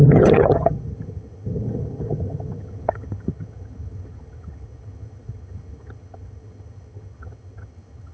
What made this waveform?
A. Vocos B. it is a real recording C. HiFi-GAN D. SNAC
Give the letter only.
C